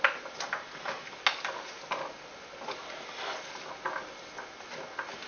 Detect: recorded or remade recorded